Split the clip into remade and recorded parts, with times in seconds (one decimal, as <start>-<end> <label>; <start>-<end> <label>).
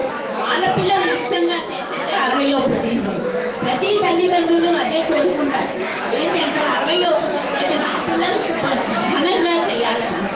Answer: 0.0-10.3 remade